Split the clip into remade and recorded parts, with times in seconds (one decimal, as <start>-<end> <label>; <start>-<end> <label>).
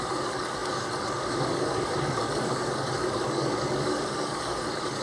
0.0-5.0 remade